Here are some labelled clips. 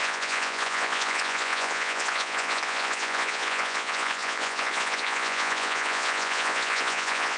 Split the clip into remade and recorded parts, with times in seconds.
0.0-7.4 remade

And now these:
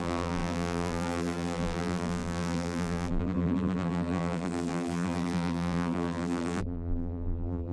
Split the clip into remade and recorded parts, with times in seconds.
0.0-7.7 remade